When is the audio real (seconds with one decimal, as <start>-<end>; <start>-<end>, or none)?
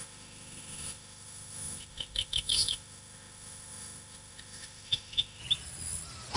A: 5.4-6.4